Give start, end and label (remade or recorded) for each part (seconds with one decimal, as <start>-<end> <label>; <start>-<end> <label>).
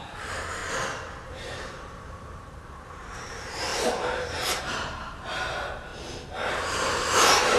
0.0-0.6 remade; 0.6-1.3 recorded; 1.3-5.9 remade; 5.9-6.5 recorded; 6.5-7.6 remade